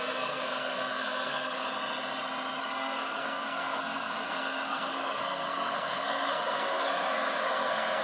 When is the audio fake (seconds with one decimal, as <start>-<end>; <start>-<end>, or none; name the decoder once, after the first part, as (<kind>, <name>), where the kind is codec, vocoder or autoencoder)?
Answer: 0.0-1.7 (codec, SNAC); 2.6-8.0